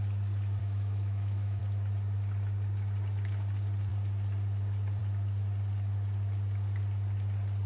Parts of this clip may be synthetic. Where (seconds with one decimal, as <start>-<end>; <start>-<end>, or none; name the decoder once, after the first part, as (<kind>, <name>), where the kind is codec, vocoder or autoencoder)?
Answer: 0.6-1.6 (autoencoder, DAC-VAE)